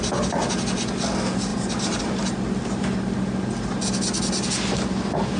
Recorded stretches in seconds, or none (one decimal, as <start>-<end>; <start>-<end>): 0.0-1.5; 2.0-5.4